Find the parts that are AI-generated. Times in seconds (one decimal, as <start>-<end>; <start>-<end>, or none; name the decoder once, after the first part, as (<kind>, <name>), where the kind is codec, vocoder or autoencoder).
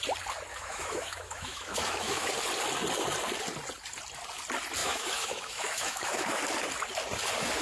0.5-2.3 (autoencoder, DAC-VAE); 4.8-6.4